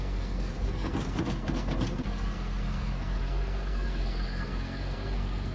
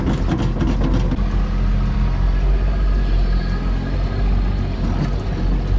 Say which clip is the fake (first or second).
first